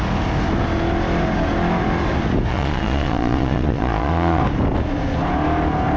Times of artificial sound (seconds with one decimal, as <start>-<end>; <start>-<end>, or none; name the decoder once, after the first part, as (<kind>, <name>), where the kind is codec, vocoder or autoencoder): 2.5-4.4 (vocoder, Vocos)